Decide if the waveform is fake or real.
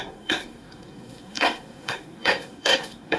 fake